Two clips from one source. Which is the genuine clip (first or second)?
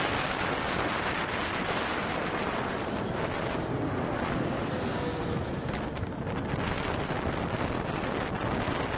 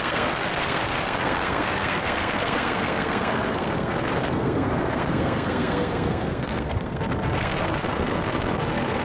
first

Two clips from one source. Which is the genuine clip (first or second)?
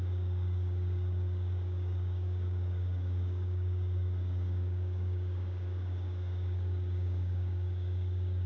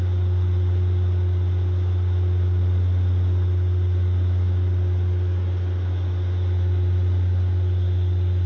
second